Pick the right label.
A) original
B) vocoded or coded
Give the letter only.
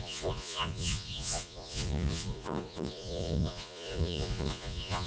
B